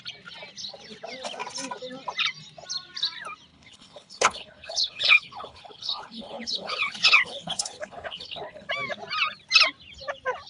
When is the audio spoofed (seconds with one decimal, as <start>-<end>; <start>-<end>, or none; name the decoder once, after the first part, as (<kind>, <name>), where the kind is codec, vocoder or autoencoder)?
3.5-8.7 (codec, HILCodec)